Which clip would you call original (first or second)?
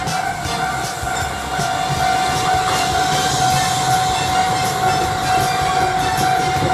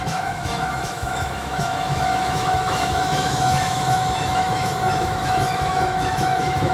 first